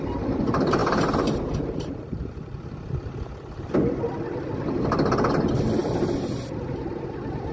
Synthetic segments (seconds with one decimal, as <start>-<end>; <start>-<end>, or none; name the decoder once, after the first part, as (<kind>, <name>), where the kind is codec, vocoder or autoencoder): none